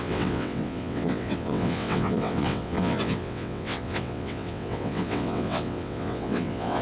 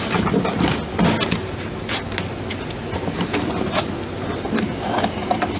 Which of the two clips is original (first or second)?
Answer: second